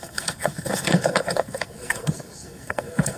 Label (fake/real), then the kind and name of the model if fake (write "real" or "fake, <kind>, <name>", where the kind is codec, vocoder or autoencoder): fake, codec, SNAC